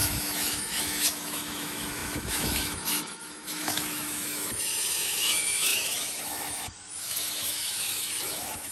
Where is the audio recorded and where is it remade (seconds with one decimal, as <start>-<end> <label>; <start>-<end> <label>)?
0.0-8.7 remade